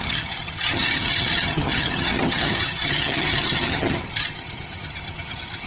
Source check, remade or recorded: remade